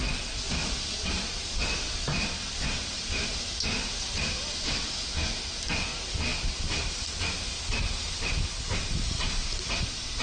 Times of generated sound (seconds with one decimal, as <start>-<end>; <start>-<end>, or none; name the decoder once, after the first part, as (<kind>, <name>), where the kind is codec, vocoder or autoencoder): none